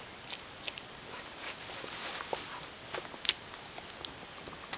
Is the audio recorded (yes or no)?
yes